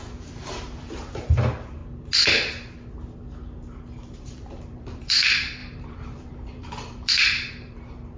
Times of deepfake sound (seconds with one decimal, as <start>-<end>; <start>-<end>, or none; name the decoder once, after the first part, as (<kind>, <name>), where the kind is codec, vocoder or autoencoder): 0.0-1.8 (vocoder, BigVGAN v2); 4.0-8.2